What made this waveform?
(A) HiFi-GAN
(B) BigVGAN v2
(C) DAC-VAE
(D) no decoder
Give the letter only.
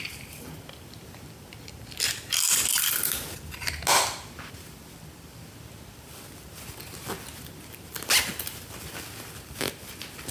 D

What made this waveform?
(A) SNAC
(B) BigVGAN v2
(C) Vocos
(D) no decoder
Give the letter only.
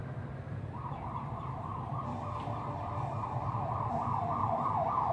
B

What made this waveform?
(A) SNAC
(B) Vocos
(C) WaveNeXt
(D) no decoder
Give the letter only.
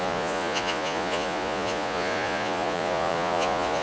B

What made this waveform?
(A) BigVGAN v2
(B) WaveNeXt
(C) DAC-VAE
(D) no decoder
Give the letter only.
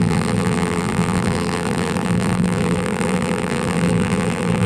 A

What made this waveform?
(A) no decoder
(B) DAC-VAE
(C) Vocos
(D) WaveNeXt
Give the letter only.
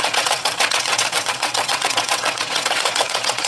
D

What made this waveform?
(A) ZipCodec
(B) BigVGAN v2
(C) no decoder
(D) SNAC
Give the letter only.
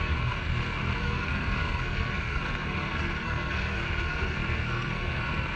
D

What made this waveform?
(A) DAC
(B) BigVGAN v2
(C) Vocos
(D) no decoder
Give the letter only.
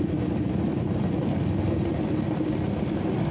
D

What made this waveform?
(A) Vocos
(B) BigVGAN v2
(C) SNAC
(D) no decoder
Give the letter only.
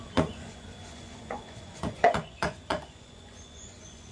A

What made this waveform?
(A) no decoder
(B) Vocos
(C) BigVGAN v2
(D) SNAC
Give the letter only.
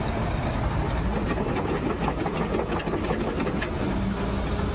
A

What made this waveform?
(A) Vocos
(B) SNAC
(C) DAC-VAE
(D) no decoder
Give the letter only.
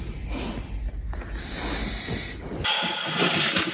D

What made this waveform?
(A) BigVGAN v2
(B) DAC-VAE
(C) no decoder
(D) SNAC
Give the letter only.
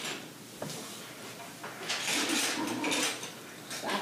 C